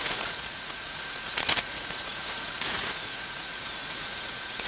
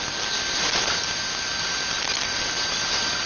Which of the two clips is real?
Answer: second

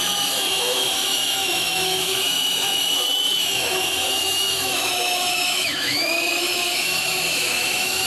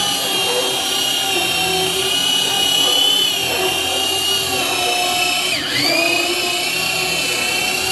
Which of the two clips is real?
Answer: second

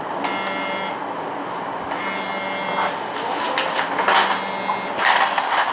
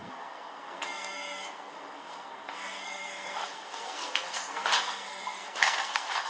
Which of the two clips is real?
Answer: first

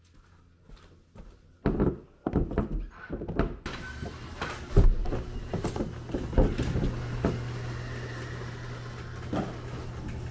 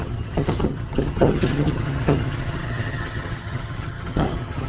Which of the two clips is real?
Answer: first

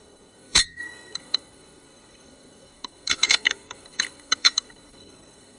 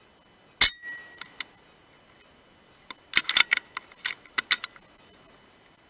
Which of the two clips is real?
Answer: second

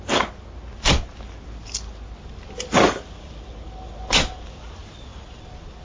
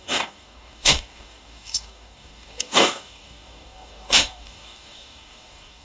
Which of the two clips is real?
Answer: first